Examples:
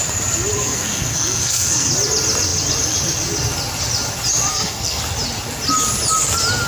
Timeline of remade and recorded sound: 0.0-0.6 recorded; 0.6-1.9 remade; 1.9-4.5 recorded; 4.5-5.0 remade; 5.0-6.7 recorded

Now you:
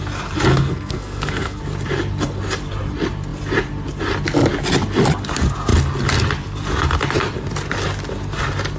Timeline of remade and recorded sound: 0.0-0.5 recorded; 0.5-1.6 remade; 1.6-8.8 recorded

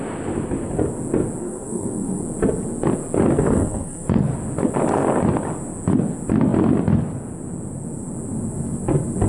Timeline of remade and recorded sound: 0.0-1.4 recorded; 1.4-2.2 remade; 2.2-3.4 recorded; 3.4-4.3 remade; 4.3-9.3 recorded